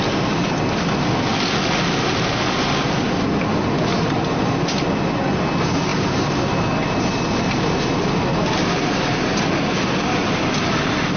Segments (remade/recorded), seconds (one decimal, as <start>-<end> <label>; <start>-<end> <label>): 0.0-11.2 recorded